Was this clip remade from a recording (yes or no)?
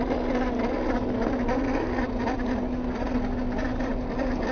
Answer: no